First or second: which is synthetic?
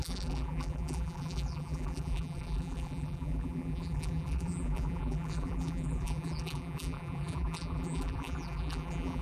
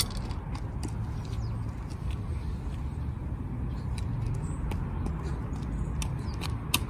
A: first